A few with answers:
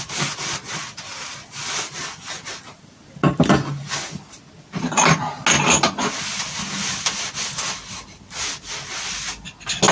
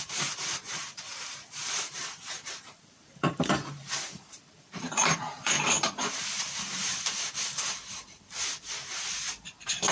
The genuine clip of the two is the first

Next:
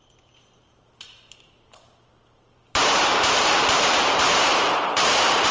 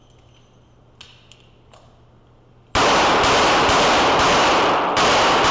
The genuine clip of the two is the second